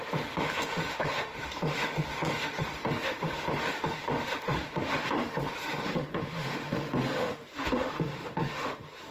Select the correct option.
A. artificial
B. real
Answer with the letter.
A